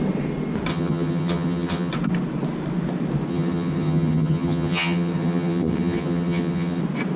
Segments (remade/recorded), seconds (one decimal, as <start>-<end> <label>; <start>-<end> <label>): 0.0-0.7 recorded; 0.7-1.9 remade; 1.9-3.3 recorded; 3.3-6.8 remade; 6.8-7.2 recorded